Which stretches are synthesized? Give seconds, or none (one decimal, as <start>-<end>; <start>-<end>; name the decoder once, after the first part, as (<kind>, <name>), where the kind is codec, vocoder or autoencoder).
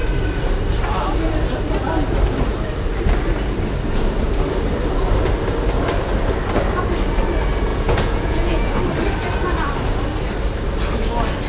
7.7-8.8 (vocoder, Vocos)